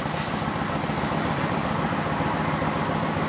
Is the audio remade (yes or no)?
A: no